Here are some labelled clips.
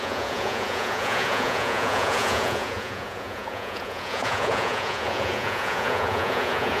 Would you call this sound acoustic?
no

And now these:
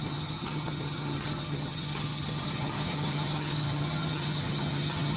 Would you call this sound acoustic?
no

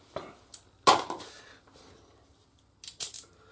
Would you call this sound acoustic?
yes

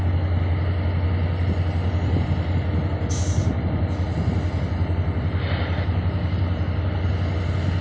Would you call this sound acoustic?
yes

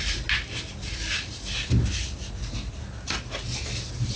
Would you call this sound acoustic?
yes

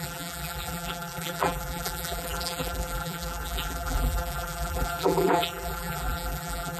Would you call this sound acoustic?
no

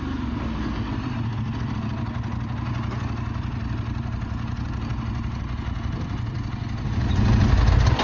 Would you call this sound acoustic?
yes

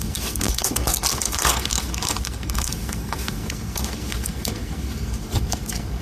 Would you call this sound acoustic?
no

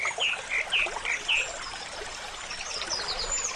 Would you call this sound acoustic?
yes